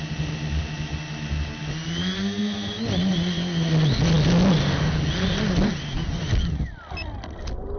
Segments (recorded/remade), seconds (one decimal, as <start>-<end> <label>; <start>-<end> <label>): 0.0-7.8 recorded